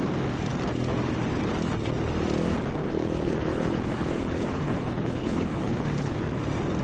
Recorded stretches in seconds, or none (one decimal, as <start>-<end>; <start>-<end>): 0.0-2.8; 6.1-6.8